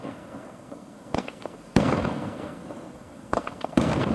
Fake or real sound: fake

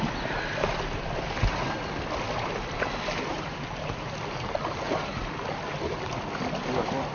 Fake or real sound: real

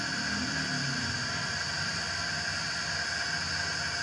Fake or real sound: real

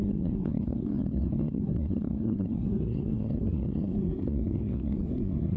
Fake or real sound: fake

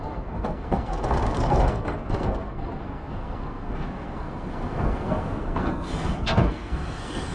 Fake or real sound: fake